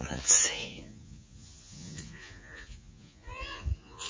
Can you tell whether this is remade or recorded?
remade